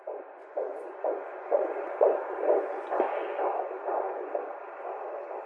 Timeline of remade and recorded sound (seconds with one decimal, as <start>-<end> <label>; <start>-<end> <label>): 0.0-0.4 recorded; 0.4-2.9 remade; 2.9-3.6 recorded; 3.6-4.3 remade; 4.3-5.5 recorded